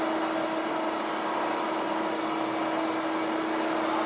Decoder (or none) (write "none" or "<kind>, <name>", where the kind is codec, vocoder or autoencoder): none